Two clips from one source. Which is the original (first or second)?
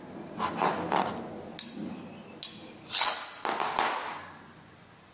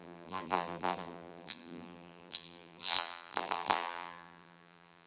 first